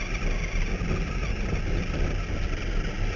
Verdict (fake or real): real